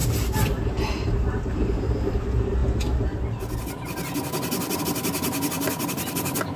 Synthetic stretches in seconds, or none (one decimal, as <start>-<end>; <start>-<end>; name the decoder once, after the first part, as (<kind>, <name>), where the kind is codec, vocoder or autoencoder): none